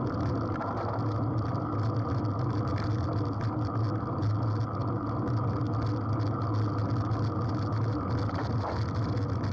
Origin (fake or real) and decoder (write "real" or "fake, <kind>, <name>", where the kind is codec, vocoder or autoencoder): real